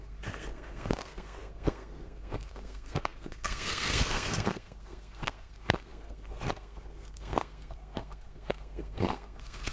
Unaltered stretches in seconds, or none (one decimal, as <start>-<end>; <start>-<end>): none